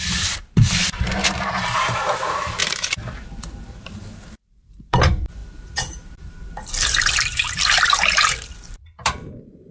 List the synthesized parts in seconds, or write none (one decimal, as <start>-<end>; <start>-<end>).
0.0-9.7